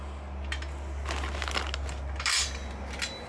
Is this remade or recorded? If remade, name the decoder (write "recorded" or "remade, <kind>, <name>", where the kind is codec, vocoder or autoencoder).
recorded